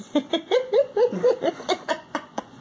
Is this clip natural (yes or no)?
no